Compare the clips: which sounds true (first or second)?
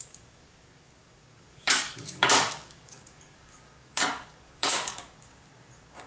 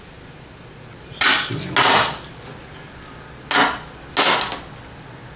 second